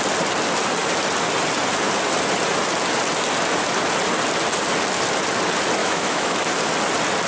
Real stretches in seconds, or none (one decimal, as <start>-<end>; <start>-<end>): 0.0-5.8; 6.4-7.3

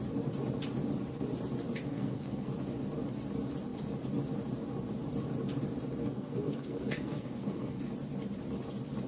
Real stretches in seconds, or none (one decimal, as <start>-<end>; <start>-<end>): 0.0-1.9; 2.5-6.0; 7.8-9.1

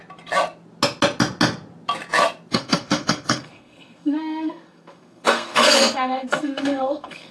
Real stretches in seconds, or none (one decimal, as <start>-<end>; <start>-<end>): 0.0-2.5

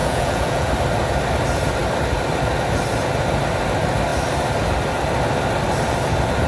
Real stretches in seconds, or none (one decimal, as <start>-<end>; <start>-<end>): 0.7-6.5